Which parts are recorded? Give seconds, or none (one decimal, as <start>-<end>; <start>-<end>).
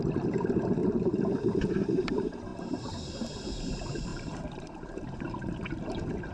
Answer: none